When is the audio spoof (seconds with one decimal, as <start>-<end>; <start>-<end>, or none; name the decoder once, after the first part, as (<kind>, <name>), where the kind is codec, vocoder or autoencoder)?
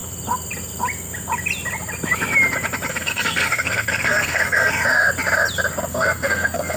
2.9-4.7 (codec, SNAC); 5.9-6.8